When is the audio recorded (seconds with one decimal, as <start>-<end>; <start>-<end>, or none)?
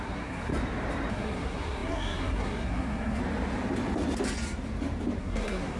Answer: 0.5-1.1; 3.2-5.2